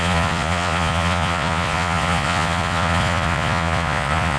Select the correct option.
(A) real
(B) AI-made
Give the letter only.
B